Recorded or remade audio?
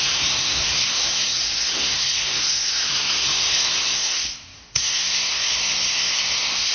remade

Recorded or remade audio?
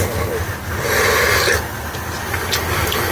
recorded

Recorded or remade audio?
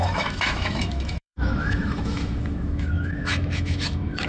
remade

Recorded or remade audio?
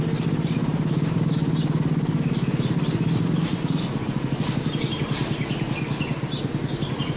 recorded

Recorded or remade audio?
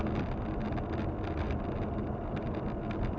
recorded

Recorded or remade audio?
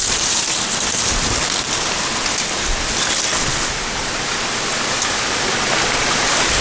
recorded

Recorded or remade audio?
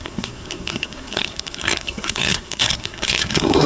remade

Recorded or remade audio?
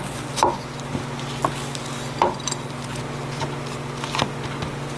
recorded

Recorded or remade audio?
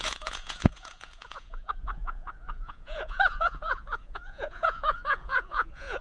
remade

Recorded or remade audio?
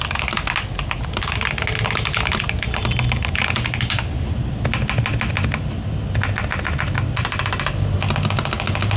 recorded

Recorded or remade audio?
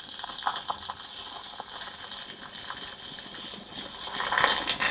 recorded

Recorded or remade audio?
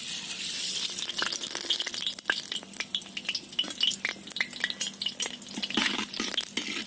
recorded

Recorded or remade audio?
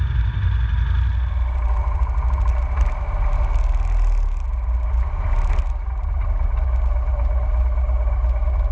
recorded